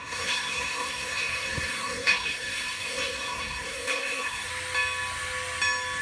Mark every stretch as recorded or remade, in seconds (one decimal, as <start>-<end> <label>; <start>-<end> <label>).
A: 0.0-4.5 remade; 4.5-6.0 recorded